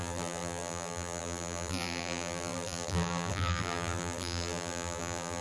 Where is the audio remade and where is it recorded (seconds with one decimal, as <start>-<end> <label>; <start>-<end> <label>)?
0.0-5.4 remade